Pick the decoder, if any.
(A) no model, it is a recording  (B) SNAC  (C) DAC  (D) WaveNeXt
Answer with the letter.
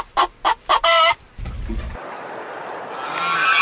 A